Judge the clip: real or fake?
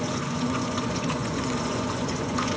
fake